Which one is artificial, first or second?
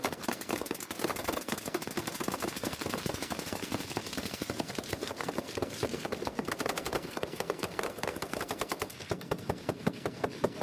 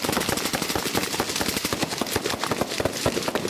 first